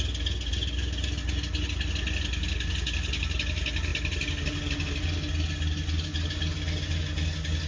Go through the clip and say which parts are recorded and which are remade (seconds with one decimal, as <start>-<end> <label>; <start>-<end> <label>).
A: 0.0-7.7 recorded